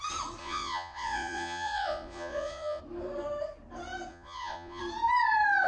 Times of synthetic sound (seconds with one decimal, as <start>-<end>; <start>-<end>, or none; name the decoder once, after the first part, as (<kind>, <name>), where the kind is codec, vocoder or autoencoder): 0.4-2.8 (vocoder, Vocos); 4.1-4.8